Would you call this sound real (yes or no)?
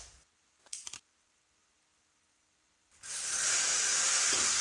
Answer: yes